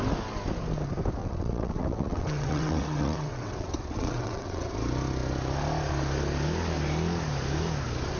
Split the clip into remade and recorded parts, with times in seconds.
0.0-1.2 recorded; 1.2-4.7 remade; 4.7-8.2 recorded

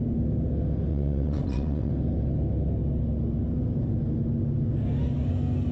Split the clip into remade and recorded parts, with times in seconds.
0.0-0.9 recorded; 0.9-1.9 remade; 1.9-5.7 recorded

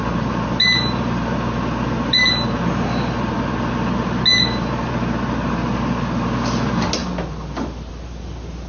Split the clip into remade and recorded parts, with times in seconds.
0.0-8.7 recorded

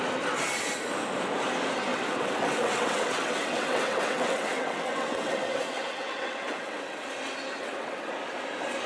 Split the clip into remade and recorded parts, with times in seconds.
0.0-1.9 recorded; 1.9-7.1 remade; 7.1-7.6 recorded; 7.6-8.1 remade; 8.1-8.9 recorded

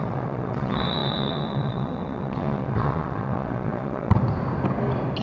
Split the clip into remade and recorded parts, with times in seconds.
0.0-4.2 remade; 4.2-5.2 recorded